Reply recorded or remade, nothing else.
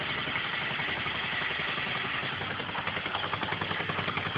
recorded